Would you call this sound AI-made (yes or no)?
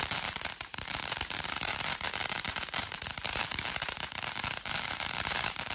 yes